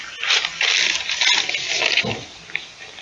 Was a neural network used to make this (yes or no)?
no